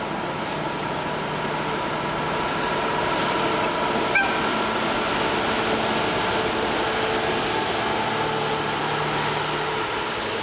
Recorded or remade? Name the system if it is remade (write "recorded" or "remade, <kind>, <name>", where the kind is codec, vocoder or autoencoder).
recorded